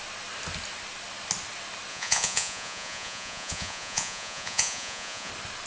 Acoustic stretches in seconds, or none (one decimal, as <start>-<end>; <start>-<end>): 0.0-1.9; 5.3-5.7